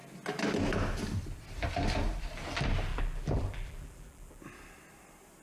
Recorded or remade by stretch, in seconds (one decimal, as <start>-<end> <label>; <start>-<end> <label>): 0.0-2.9 recorded; 2.9-4.4 remade; 4.4-5.4 recorded